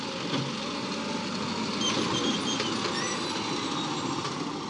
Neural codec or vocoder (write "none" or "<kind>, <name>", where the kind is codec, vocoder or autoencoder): none